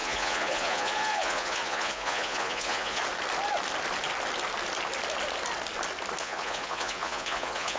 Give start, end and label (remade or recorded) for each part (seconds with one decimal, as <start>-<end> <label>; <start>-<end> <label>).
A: 0.0-3.0 remade; 3.0-6.2 recorded; 6.2-7.8 remade